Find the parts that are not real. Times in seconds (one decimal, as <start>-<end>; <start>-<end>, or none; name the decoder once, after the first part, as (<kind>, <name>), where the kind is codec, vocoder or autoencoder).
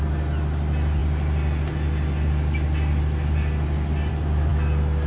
none